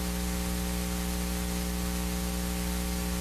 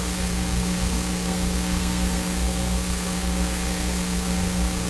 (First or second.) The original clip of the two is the first